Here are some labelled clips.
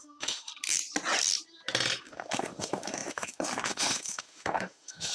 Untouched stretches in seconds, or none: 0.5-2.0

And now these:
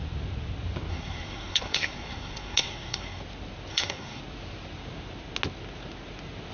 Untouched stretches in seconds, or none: 0.0-0.9; 3.2-3.7; 4.2-6.5

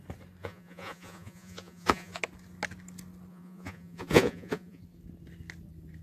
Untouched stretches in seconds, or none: 0.0-0.4; 2.2-3.3; 4.8-6.0

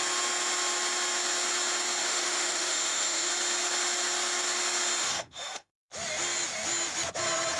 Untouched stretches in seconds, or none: 0.0-2.0; 3.3-5.0; 5.9-7.6

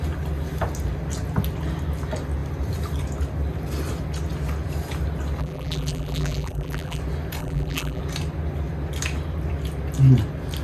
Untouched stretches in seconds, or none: 0.0-5.4; 7.0-7.4; 8.0-10.6

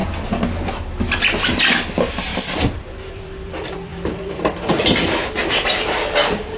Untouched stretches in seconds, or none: 0.0-1.9; 2.3-3.1

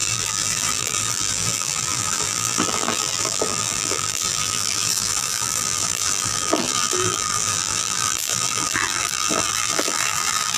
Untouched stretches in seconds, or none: none

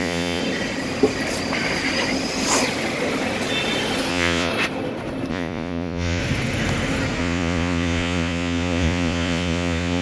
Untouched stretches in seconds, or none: 0.4-4.1; 4.5-5.3; 6.2-7.2